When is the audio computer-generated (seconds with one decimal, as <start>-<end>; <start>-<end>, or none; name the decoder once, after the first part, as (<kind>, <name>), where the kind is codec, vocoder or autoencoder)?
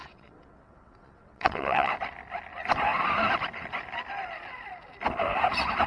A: 0.0-1.9 (vocoder, WaveNeXt)